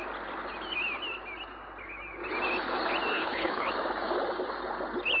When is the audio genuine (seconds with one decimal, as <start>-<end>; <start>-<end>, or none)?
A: 0.0-3.1; 3.7-5.2